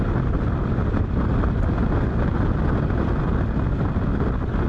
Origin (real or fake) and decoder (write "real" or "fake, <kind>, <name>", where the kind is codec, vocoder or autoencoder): real